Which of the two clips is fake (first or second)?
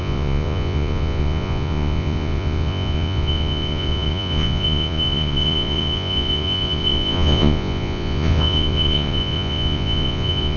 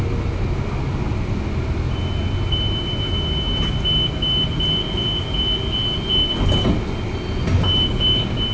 first